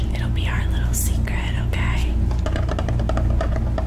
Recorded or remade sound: recorded